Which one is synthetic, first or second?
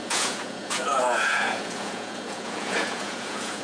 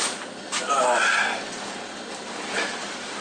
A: first